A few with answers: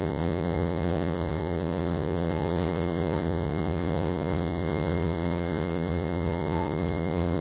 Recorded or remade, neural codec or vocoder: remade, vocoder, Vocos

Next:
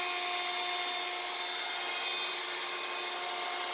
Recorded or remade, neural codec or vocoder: recorded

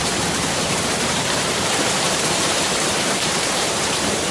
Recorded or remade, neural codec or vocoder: remade, vocoder, BigVGAN v2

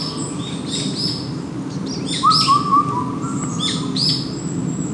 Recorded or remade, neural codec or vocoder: recorded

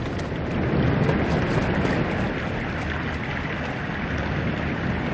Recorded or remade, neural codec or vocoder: recorded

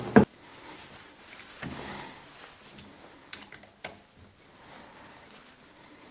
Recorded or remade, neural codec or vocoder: recorded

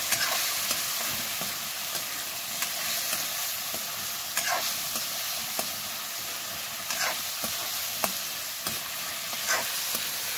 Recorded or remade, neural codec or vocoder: recorded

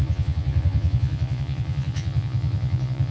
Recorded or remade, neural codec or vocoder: remade, vocoder, Vocos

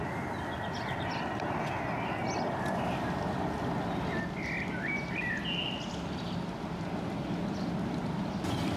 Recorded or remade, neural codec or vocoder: recorded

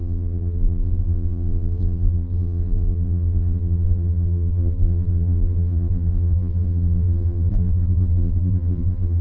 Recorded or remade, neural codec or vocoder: remade, vocoder, BigVGAN v2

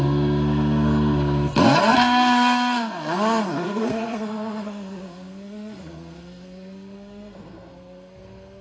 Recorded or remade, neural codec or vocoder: remade, codec, SNAC